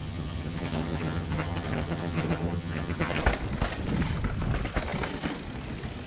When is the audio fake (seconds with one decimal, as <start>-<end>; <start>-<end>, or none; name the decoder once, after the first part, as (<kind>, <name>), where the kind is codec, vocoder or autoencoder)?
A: 0.0-3.2 (vocoder, HiFi-GAN)